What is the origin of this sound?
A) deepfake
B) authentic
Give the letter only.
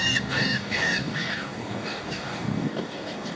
A